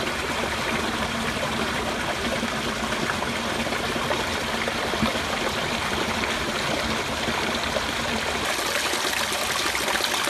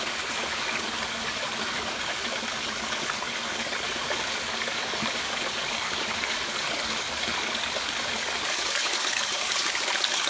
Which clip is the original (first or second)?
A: first